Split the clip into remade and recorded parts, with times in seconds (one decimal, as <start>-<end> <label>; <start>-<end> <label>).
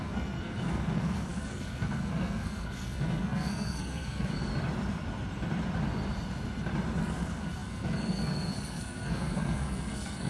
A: 0.0-4.5 remade; 4.5-7.0 recorded; 7.0-10.3 remade